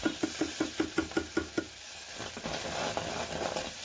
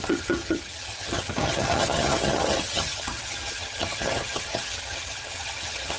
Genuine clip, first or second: first